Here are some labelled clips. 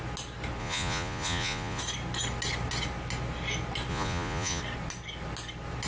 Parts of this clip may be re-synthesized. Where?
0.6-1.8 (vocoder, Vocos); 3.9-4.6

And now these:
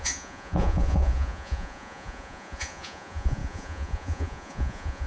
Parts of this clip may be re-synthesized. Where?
0.0-5.1 (vocoder, Vocos)

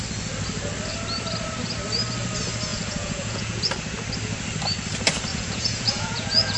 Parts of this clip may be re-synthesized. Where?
2.7-3.6 (vocoder, Vocos); 5.3-6.6